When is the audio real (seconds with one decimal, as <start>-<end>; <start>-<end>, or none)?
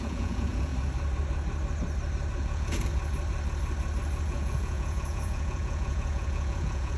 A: 0.7-2.3; 2.9-4.2